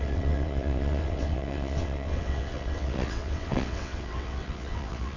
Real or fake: fake